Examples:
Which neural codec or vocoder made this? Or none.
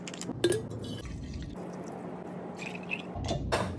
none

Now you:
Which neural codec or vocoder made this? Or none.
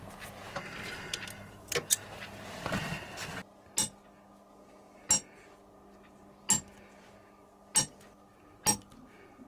none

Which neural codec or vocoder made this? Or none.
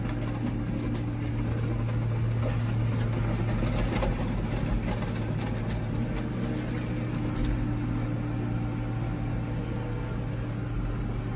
none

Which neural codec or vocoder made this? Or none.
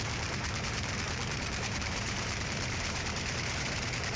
vocoder, BigVGAN v2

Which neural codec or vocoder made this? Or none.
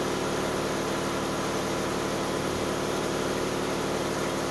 none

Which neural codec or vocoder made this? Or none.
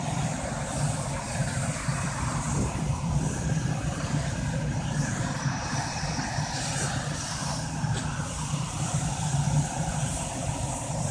vocoder, BigVGAN v2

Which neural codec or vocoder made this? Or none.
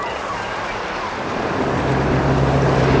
vocoder, BigVGAN v2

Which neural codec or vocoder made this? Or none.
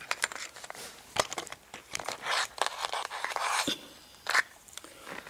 vocoder, BigVGAN v2